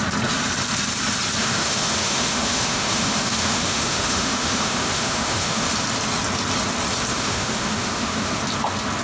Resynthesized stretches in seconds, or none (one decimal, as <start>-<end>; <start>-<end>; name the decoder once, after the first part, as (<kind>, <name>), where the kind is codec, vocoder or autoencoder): 1.4-5.7 (autoencoder, DAC-VAE); 7.1-8.4